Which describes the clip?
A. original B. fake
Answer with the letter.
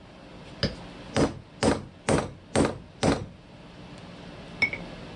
A